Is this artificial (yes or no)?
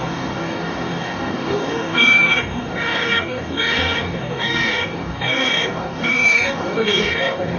yes